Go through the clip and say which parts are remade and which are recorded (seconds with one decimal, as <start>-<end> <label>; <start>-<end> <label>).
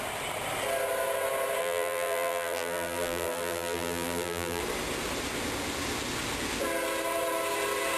0.0-1.6 recorded; 1.6-4.6 remade; 4.6-8.0 recorded